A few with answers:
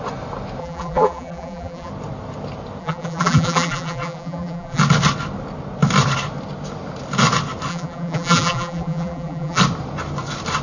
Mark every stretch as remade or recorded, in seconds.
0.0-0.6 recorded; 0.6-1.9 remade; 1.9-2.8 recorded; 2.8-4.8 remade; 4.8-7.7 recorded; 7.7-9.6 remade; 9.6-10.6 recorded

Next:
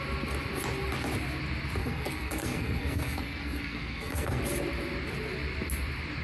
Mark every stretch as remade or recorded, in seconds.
0.0-1.8 recorded; 1.8-4.4 remade; 4.4-6.2 recorded

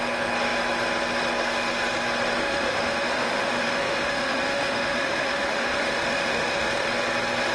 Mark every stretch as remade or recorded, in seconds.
0.0-2.4 recorded; 2.4-6.9 remade; 6.9-7.5 recorded

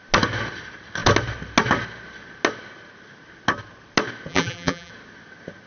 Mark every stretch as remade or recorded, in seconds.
0.0-4.3 recorded; 4.3-4.9 remade; 4.9-5.7 recorded

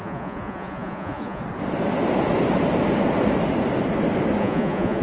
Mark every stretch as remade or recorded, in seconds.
0.0-1.4 remade; 1.4-4.4 recorded; 4.4-5.0 remade